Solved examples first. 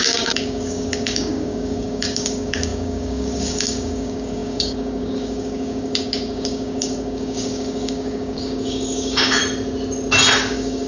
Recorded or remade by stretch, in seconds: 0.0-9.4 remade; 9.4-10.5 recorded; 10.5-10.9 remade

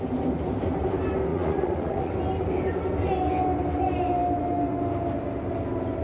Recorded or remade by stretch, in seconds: 0.0-1.3 recorded; 1.3-2.1 remade; 2.1-6.0 recorded

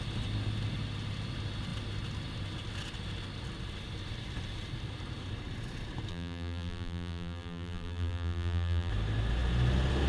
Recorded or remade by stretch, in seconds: 0.0-6.1 recorded; 6.1-8.9 remade; 8.9-10.1 recorded

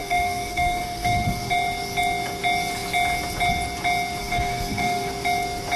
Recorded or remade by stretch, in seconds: 0.0-1.5 remade; 1.5-4.2 recorded; 4.2-5.1 remade; 5.1-5.8 recorded

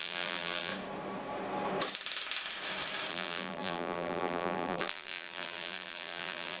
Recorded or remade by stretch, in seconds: 0.0-0.7 remade; 0.7-3.1 recorded; 3.1-6.6 remade